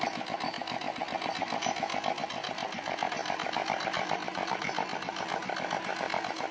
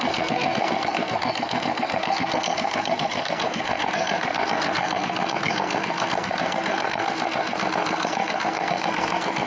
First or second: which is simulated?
second